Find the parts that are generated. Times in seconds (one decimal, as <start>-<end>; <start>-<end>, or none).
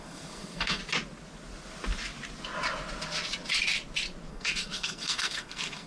0.0-0.8; 4.3-5.9